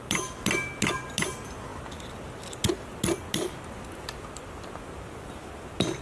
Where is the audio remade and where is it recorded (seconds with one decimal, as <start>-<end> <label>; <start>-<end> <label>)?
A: 0.0-6.0 recorded